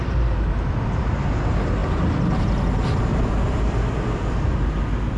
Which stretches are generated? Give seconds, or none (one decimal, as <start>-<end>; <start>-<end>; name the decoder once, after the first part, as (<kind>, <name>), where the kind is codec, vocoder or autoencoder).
1.8-2.4 (vocoder, BigVGAN v2); 3.1-4.7